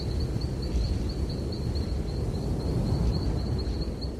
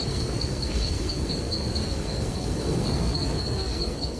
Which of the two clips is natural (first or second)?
first